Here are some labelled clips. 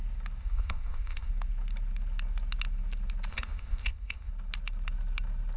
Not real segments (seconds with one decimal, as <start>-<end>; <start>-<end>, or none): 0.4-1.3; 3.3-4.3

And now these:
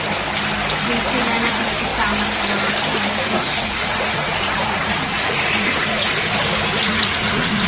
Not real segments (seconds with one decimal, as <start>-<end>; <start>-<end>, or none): 3.2-6.1; 6.8-7.7

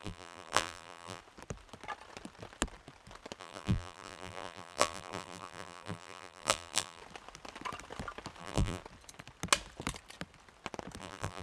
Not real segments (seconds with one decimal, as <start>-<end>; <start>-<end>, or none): 0.0-1.2; 3.4-7.0; 8.4-8.8; 11.0-11.4

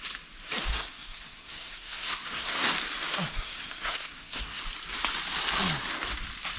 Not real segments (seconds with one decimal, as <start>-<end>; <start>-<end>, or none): 0.7-2.7; 3.3-4.6

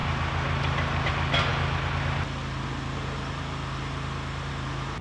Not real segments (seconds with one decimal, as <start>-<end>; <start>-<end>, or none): none

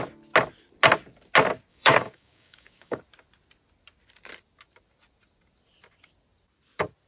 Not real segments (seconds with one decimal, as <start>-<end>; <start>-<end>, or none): 1.7-3.0